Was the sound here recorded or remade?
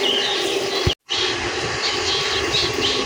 recorded